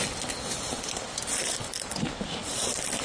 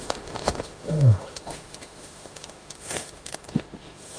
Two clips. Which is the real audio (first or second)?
first